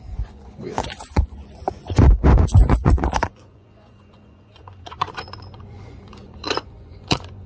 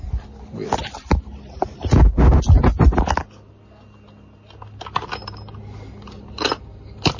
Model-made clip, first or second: first